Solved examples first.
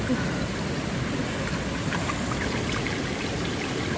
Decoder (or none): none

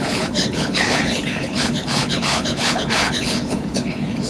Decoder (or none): codec, HILCodec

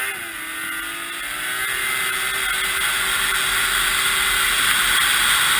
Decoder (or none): none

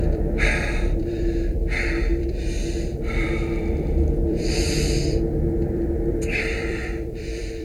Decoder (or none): vocoder, BigVGAN v2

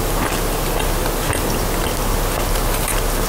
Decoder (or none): none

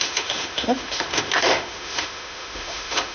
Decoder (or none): autoencoder, DAC-VAE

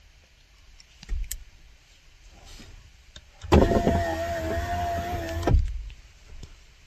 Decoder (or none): none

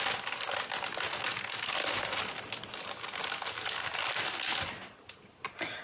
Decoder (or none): none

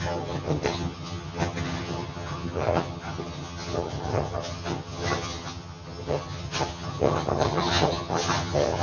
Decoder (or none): vocoder, HiFi-GAN